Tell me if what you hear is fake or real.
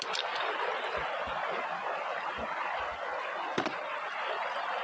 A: real